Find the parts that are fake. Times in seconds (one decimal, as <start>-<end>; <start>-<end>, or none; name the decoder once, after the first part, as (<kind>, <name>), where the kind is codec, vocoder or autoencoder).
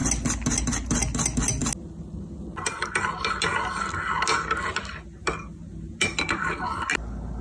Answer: none